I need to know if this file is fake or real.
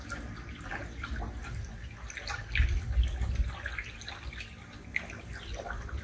real